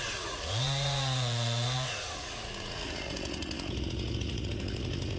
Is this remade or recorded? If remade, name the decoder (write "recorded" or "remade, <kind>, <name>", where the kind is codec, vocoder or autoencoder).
remade, vocoder, Vocos